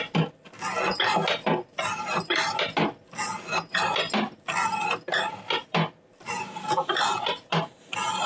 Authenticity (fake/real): real